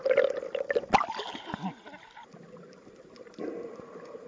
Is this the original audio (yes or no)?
yes